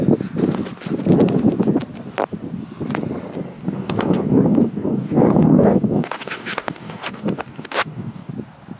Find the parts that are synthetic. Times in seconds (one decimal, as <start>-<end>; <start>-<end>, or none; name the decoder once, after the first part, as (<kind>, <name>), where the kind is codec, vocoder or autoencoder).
3.5-8.3 (codec, DAC)